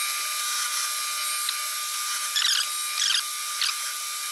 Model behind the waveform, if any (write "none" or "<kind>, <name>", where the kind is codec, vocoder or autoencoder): none